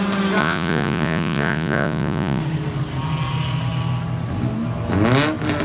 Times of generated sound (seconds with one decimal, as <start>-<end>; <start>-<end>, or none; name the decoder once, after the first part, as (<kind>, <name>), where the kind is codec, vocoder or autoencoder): 0.4-2.4 (vocoder, Vocos)